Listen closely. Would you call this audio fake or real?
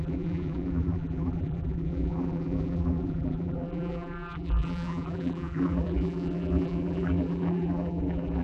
fake